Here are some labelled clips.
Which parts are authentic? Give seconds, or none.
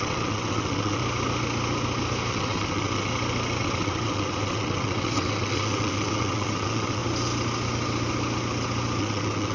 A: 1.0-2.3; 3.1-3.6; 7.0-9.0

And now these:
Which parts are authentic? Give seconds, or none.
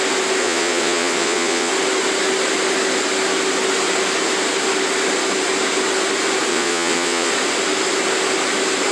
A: 0.0-0.4; 1.7-6.5; 7.3-8.9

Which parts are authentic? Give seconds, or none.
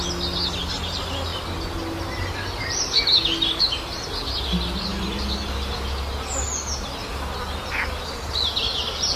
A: 0.0-9.2